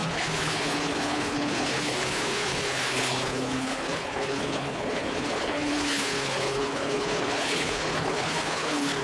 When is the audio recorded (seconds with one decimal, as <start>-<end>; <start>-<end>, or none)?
none